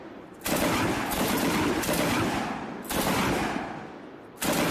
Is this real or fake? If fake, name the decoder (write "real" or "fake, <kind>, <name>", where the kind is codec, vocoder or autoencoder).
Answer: real